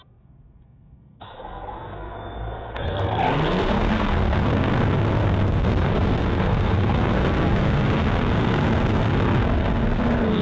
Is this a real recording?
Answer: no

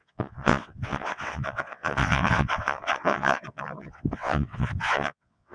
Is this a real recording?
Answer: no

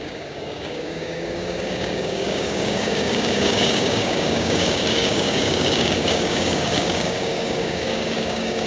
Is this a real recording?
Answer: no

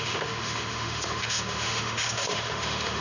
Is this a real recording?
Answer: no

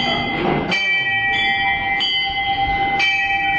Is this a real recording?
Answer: yes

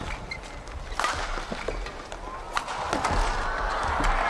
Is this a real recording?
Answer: yes